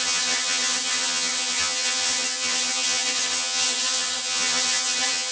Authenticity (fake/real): fake